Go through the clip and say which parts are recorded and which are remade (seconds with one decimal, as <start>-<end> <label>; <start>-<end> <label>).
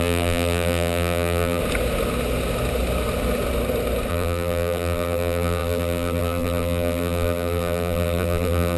0.0-1.6 remade; 1.6-4.1 recorded; 4.1-8.8 remade